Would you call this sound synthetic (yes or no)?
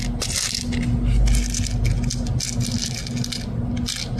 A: no